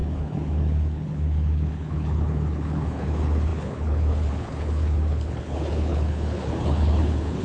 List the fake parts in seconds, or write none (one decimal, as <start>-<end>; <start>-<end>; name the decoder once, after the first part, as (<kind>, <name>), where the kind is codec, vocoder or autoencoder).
0.0-7.4 (codec, HILCodec)